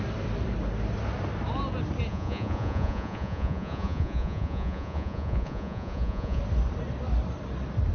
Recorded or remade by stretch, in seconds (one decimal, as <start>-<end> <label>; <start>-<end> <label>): 0.0-2.1 recorded; 2.1-6.4 remade; 6.4-7.9 recorded